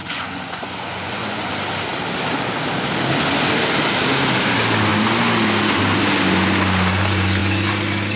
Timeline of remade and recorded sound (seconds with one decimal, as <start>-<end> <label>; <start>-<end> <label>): 0.0-1.5 remade; 1.5-8.2 recorded